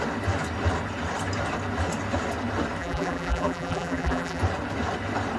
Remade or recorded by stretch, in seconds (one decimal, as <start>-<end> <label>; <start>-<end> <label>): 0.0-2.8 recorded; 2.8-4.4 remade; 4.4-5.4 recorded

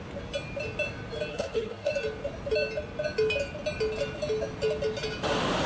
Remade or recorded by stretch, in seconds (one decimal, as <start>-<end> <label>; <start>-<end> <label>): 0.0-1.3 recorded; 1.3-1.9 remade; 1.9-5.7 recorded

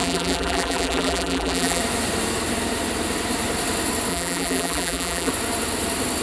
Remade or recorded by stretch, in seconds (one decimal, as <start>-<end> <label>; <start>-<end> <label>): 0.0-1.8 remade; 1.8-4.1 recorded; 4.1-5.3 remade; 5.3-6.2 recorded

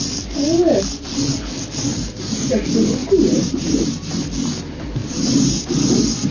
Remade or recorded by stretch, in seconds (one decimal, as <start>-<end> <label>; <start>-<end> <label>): 0.0-1.9 recorded; 1.9-2.5 remade; 2.5-3.0 recorded; 3.0-4.2 remade; 4.2-5.0 recorded; 5.0-5.6 remade; 5.6-6.3 recorded

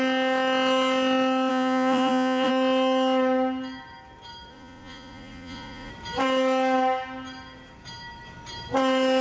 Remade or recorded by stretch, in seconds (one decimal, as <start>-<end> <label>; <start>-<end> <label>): 0.0-1.5 recorded; 1.5-2.5 remade; 2.5-4.5 recorded; 4.5-5.9 remade; 5.9-9.2 recorded

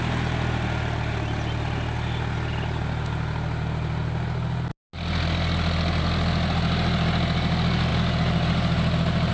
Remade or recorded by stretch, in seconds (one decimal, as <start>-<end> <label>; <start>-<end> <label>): 0.0-9.3 recorded